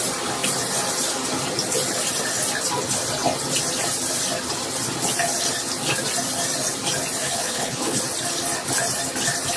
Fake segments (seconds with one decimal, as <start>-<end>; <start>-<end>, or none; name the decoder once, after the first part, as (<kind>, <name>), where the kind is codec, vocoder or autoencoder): 7.2-8.0 (codec, HILCodec)